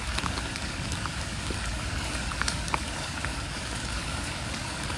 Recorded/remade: remade